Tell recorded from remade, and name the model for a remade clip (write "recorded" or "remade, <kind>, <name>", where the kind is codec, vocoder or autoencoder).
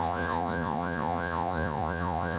remade, vocoder, Vocos